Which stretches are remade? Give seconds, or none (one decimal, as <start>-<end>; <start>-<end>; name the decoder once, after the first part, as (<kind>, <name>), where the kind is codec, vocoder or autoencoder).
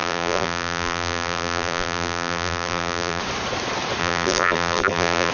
0.0-3.2 (vocoder, BigVGAN v2); 4.0-5.3